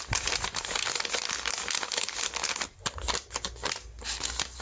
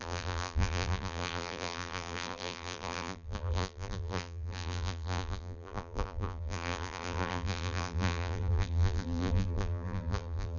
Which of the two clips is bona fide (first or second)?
first